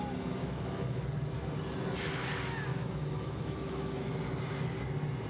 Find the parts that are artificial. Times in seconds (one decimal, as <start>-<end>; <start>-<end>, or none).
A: 0.4-1.0; 2.7-4.1